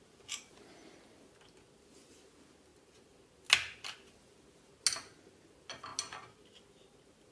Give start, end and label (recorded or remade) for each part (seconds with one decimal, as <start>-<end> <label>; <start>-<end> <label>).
0.0-7.3 recorded